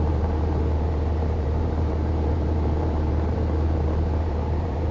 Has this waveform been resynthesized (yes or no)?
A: yes